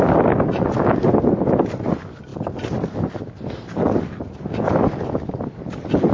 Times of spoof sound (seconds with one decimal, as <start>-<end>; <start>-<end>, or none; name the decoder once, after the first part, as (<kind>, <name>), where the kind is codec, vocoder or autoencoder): none